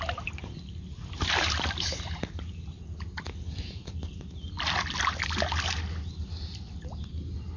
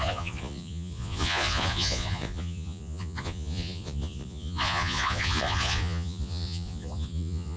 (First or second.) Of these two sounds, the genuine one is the first